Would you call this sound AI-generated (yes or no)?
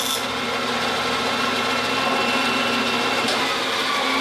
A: no